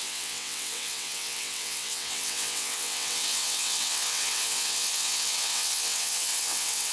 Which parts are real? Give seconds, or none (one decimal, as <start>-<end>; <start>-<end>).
none